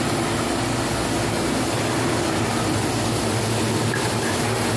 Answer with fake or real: real